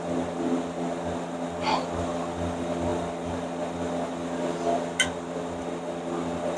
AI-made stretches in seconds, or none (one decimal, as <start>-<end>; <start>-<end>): none